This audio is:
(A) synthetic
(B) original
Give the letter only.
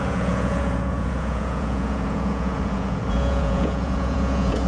A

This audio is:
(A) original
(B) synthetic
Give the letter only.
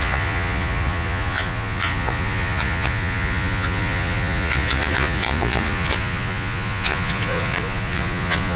B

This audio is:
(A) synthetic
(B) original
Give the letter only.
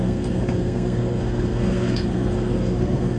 A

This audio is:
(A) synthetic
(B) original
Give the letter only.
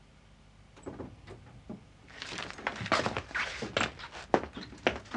B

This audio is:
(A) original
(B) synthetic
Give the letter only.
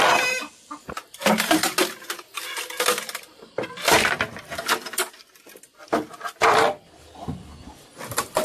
A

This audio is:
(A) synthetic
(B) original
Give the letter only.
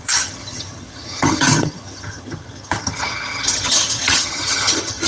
A